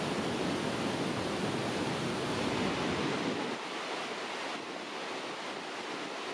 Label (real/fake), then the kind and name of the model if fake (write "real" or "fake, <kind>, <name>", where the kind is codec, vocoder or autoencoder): real